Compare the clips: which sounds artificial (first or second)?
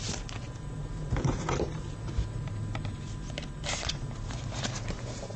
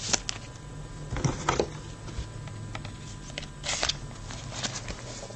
first